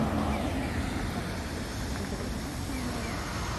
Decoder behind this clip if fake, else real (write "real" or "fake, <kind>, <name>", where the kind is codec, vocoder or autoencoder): real